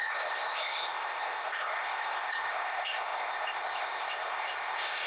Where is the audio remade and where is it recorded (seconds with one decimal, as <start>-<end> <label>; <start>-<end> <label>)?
0.0-5.1 remade